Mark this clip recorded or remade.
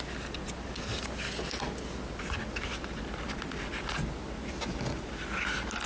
recorded